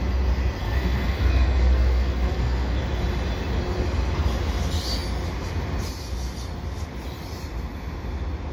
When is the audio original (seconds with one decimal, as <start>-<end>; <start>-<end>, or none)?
0.0-0.6; 2.8-8.5